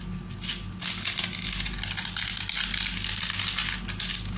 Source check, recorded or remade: recorded